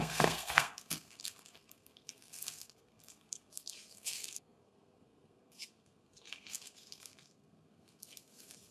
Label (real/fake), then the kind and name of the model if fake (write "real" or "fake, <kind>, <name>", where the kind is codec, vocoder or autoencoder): fake, codec, SNAC